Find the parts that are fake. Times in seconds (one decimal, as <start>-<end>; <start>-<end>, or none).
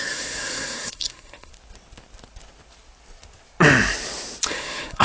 0.0-1.5; 4.5-5.0